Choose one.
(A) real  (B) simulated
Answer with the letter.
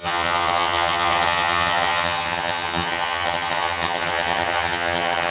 B